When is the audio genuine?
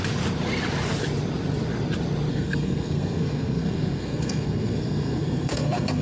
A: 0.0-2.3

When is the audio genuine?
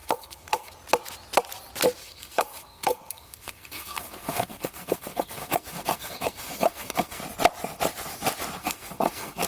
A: 0.7-2.0; 7.2-8.6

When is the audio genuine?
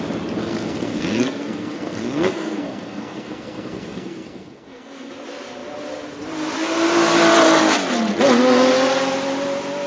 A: 0.0-0.4; 5.1-9.9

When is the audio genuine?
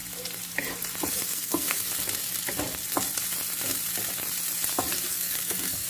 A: 0.0-1.1; 1.9-5.1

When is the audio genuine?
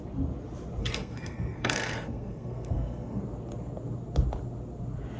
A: 0.0-0.8; 3.2-5.2